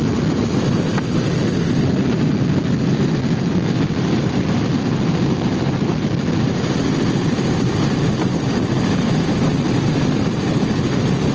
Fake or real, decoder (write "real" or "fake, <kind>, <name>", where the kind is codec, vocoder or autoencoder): fake, vocoder, BigVGAN v2